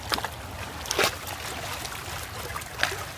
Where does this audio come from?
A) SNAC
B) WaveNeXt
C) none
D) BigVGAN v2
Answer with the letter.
C